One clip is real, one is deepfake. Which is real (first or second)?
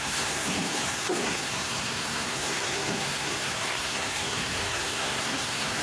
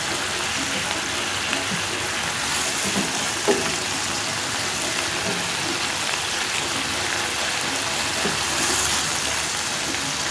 second